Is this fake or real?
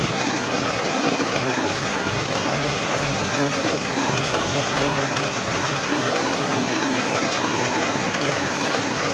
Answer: fake